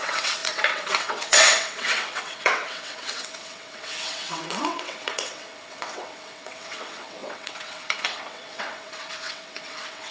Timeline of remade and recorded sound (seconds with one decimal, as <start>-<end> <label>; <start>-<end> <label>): 0.0-10.1 remade